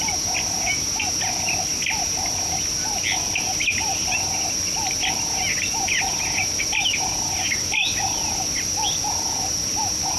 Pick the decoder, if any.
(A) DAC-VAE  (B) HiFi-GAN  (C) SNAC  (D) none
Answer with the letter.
D